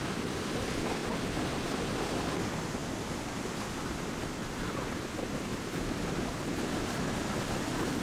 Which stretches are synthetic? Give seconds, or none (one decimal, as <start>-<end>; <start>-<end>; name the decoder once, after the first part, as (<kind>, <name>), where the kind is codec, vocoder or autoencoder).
none